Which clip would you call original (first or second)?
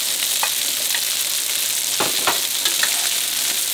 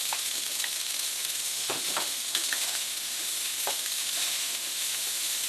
first